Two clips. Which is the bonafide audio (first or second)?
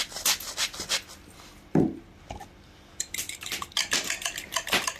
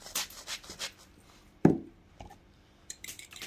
first